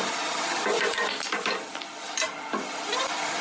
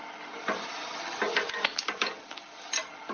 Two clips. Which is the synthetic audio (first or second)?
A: first